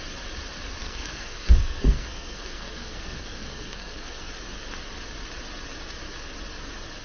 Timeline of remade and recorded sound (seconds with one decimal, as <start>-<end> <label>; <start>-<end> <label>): 0.0-0.8 recorded; 0.8-4.3 remade; 4.3-7.0 recorded